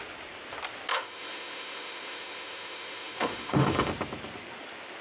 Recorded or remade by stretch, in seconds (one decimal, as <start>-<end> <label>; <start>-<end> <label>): 0.0-0.9 recorded; 0.9-3.9 remade; 3.9-5.0 recorded